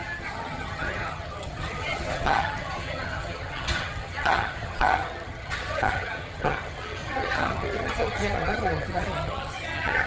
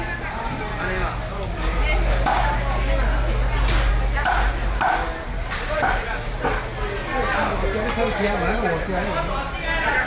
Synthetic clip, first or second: first